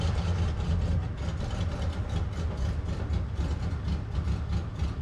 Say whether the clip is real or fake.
real